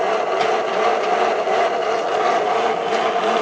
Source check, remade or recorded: recorded